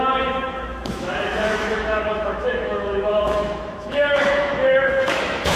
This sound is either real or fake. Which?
fake